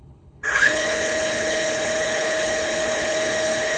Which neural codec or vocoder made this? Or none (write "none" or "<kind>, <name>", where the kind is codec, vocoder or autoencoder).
codec, HILCodec